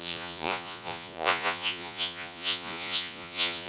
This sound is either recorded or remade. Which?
remade